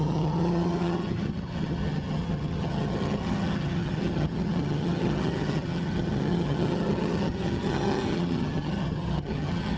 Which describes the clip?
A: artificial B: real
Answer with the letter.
A